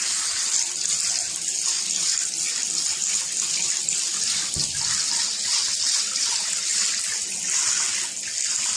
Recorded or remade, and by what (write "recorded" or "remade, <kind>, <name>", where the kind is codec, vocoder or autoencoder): recorded